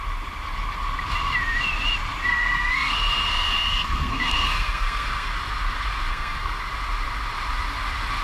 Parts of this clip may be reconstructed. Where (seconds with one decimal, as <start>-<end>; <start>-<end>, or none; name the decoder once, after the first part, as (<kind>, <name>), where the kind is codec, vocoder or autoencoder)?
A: 2.3-5.3 (codec, SNAC); 6.1-6.6